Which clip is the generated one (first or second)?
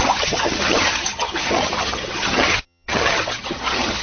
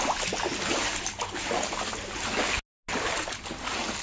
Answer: first